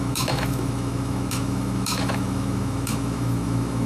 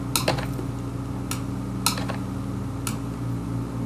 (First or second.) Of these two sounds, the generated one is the first